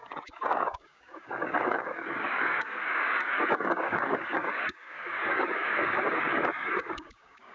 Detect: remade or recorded remade